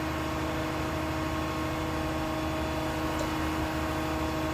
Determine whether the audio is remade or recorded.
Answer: recorded